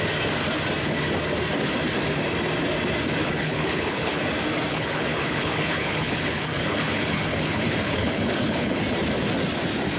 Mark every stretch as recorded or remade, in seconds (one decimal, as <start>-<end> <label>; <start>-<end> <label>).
0.0-3.2 recorded; 3.2-4.2 remade; 4.2-4.7 recorded; 4.7-8.8 remade; 8.8-10.0 recorded